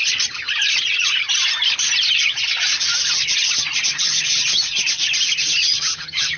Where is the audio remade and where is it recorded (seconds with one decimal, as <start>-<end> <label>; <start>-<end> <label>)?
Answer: 0.0-5.6 recorded; 5.6-6.4 remade